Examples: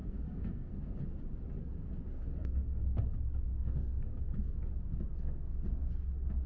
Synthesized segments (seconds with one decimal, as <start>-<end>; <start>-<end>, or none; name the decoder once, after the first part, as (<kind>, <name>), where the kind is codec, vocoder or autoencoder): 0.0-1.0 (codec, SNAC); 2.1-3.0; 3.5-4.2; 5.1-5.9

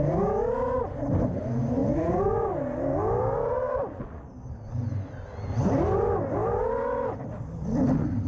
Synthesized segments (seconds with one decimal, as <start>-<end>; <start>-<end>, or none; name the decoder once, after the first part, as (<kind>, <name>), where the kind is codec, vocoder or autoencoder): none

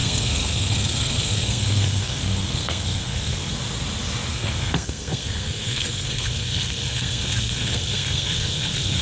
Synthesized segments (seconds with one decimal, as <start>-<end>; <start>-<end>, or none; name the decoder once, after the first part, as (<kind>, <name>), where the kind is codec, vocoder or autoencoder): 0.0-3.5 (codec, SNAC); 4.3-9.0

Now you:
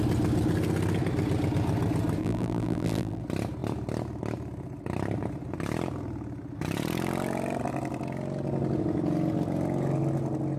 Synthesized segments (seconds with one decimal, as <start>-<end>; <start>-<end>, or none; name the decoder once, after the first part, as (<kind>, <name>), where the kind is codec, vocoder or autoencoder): 2.2-3.2 (vocoder, BigVGAN v2)